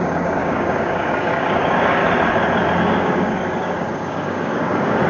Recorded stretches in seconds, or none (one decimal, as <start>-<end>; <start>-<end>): 2.0-2.8